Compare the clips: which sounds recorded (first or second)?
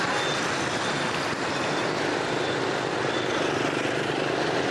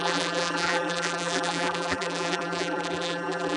first